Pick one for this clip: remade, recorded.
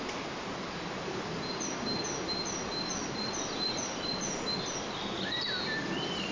recorded